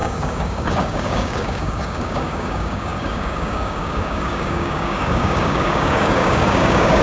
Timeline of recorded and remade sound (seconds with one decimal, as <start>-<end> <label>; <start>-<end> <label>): 0.0-7.0 remade